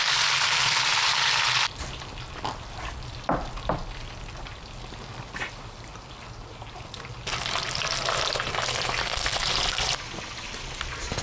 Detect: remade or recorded recorded